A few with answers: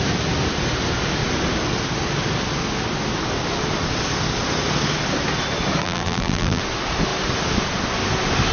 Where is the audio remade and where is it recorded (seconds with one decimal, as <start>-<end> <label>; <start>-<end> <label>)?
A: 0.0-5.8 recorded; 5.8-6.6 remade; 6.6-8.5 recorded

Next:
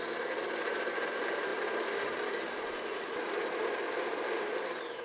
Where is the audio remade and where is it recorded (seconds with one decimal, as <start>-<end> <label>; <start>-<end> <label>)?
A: 0.0-1.5 recorded; 1.5-4.5 remade; 4.5-5.0 recorded

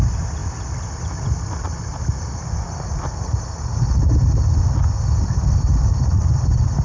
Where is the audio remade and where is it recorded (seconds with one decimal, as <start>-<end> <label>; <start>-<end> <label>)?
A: 0.0-6.8 recorded

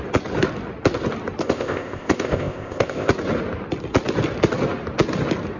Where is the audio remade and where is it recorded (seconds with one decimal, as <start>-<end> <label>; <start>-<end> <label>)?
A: 0.0-1.4 recorded; 1.4-3.1 remade; 3.1-5.6 recorded